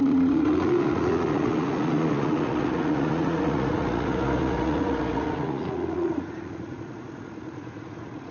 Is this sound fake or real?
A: fake